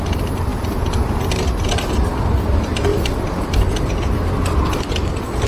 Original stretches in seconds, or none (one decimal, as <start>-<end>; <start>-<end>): 0.0-5.5